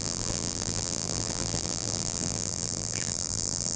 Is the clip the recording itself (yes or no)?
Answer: no